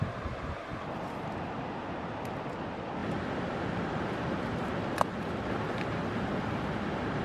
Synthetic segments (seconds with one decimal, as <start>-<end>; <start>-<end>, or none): none